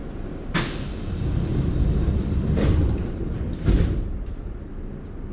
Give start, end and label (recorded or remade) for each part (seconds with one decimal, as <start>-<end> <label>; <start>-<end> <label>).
0.0-0.6 remade; 0.6-1.5 recorded; 1.5-4.7 remade; 4.7-5.3 recorded